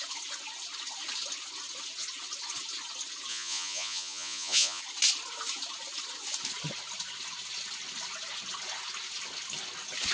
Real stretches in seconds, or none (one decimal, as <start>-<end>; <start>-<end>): 0.0-3.3; 4.8-10.1